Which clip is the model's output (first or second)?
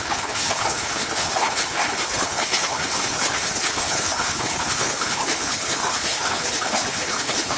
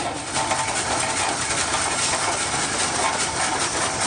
first